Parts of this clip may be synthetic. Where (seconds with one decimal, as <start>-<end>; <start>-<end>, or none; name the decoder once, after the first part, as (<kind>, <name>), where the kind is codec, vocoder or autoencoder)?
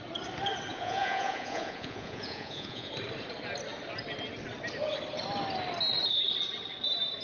0.7-2.9 (vocoder, Vocos)